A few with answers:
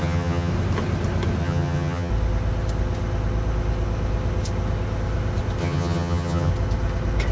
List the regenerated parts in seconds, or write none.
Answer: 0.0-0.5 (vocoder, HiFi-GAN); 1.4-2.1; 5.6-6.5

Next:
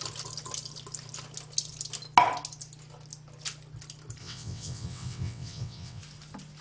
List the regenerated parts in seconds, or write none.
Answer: 4.2-6.0 (vocoder, WaveNeXt)

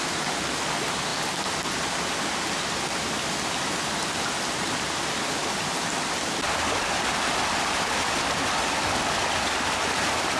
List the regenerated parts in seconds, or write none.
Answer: none

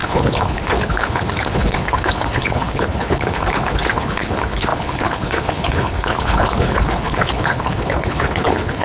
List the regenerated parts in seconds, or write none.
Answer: 0.0-8.8 (codec, HILCodec)

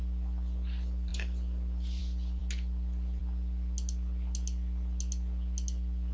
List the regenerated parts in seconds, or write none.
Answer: none

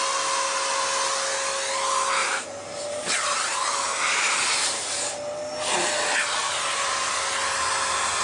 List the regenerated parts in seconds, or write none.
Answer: 2.2-4.8 (vocoder, BigVGAN v2)

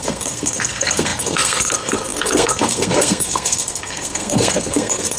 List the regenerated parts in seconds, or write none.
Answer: 0.0-5.2 (codec, SNAC)

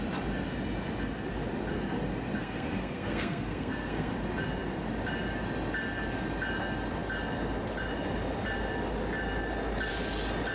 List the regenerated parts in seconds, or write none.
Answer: 2.4-4.1 (codec, SNAC)